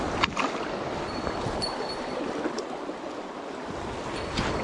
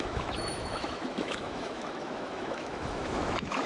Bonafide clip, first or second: first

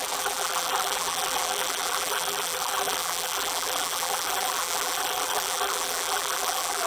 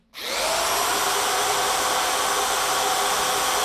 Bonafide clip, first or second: second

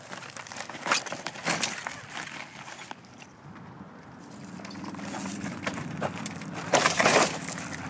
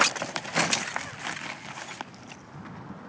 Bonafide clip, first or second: second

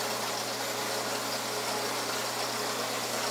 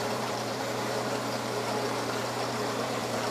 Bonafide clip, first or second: first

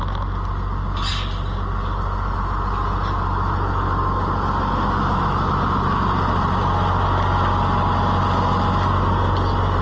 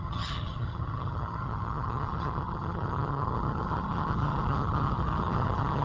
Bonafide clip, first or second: first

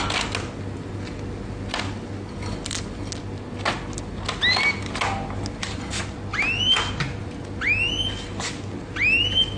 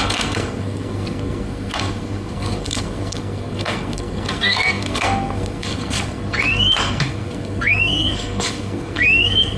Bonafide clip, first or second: first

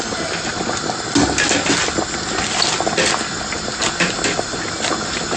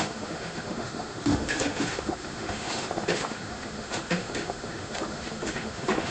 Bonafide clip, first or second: first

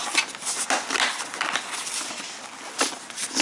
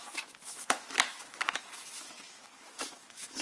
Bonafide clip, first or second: first